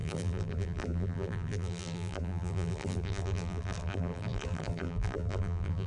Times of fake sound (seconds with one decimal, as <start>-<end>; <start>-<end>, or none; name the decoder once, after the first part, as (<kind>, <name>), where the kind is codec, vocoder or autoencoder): 0.0-5.9 (vocoder, BigVGAN v2)

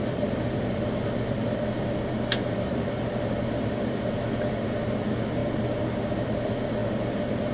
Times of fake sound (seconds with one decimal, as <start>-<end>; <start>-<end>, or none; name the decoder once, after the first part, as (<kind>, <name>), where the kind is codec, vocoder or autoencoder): 0.0-5.4 (vocoder, BigVGAN v2); 6.1-7.5